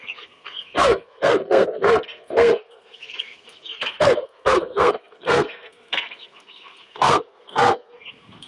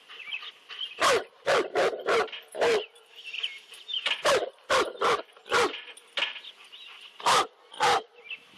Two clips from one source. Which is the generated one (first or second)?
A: first